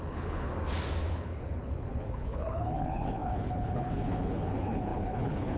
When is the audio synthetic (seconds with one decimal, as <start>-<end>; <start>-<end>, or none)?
0.0-0.5; 1.1-5.6